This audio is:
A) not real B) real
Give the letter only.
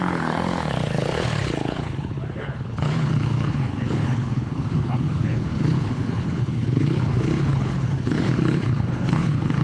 A